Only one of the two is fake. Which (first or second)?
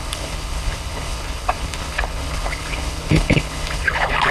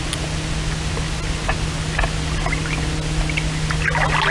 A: first